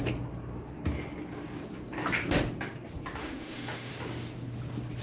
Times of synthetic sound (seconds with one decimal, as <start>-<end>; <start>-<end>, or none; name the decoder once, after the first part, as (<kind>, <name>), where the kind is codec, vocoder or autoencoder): 3.2-3.9 (autoencoder, DAC-VAE)